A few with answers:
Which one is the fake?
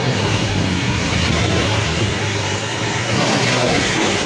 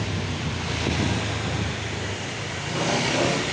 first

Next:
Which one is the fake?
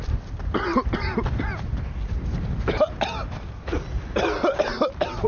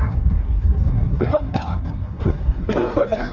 second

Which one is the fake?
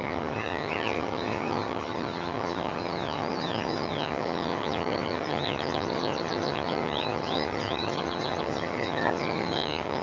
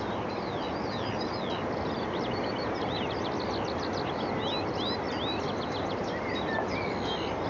first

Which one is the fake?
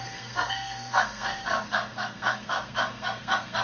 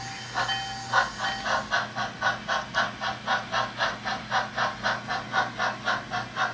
first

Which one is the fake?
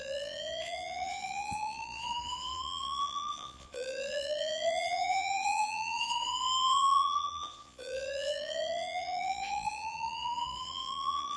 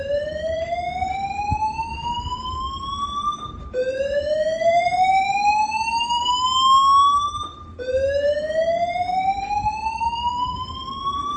first